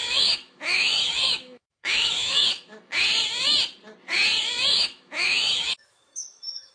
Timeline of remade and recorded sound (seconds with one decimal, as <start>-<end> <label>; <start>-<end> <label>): 0.0-2.9 remade; 2.9-4.7 recorded; 4.7-6.7 remade